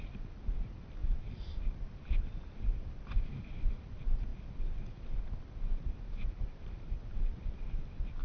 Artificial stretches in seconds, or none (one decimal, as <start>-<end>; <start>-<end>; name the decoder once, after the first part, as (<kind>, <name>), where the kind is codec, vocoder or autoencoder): none